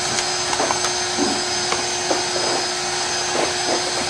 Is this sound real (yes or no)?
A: yes